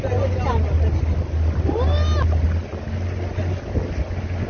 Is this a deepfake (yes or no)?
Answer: no